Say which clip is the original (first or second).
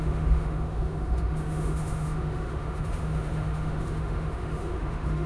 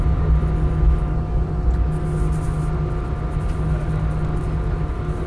second